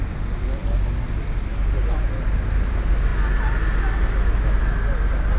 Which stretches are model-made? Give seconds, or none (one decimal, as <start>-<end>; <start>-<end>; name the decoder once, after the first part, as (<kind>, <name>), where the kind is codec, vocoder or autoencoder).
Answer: none